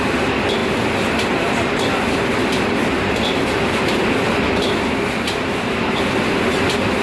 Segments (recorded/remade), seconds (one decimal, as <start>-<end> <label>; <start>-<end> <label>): 0.0-7.0 recorded